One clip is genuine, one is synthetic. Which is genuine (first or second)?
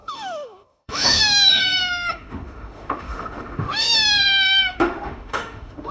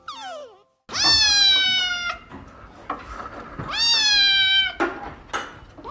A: second